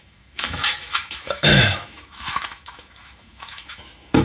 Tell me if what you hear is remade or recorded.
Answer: remade